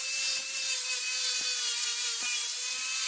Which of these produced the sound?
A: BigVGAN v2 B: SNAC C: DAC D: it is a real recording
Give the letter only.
A